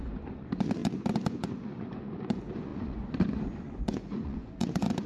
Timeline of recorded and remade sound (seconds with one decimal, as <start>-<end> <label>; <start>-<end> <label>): 0.0-5.1 remade